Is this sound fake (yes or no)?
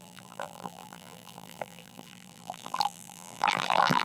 yes